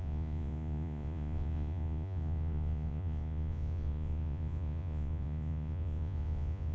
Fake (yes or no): yes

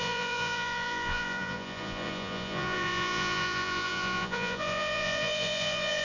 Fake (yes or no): yes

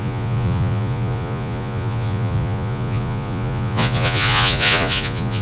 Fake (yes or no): yes